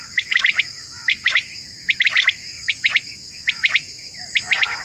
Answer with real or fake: fake